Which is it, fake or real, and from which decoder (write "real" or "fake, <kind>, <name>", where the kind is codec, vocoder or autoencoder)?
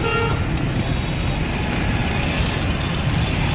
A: real